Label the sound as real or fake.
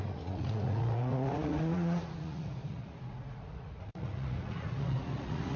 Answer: fake